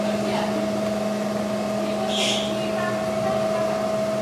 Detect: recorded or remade recorded